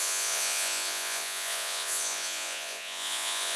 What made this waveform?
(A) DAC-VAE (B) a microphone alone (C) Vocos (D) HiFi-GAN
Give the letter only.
C